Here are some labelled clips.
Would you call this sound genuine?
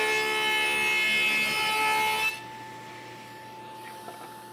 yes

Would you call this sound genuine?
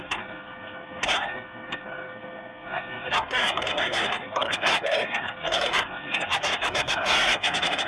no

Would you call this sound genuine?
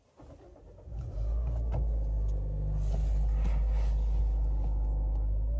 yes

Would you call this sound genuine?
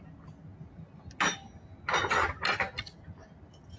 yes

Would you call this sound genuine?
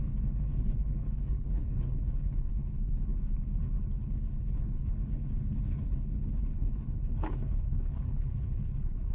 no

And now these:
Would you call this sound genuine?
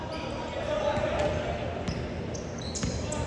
yes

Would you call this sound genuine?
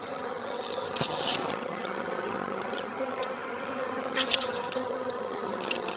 no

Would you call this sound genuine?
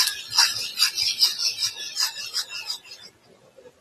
yes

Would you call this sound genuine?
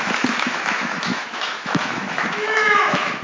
no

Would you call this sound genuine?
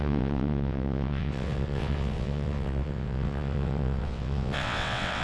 no